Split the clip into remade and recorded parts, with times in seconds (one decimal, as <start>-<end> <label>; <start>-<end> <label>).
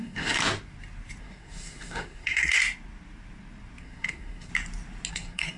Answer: 0.0-0.4 remade; 0.4-1.2 recorded; 1.2-2.6 remade; 2.6-3.8 recorded; 3.8-4.5 remade; 4.5-5.1 recorded; 5.1-5.6 remade